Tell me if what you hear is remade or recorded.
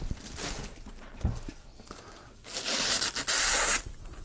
recorded